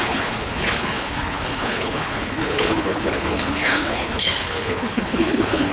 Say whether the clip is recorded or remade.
remade